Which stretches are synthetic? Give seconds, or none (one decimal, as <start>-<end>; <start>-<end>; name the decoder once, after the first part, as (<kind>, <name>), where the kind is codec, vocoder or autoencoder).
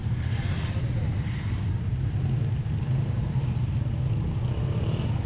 none